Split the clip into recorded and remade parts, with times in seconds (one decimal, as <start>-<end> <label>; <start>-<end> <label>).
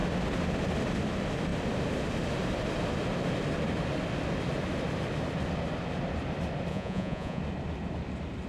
0.0-6.7 recorded; 6.7-7.4 remade; 7.4-8.5 recorded